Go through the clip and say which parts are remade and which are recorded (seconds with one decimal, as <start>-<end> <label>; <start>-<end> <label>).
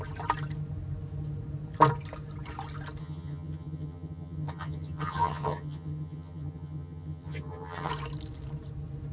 0.0-3.0 recorded; 3.0-7.9 remade; 7.9-9.1 recorded